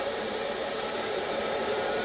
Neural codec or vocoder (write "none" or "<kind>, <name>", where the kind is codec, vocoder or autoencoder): vocoder, BigVGAN v2